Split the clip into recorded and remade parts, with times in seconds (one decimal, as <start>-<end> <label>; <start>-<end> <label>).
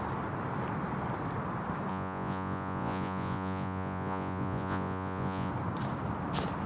0.0-1.9 recorded; 1.9-5.5 remade; 5.5-6.7 recorded